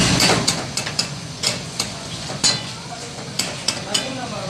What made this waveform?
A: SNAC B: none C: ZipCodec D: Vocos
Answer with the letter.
D